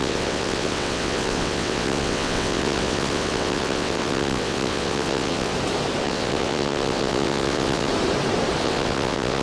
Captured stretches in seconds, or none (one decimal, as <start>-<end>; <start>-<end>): 5.5-6.0; 7.9-8.6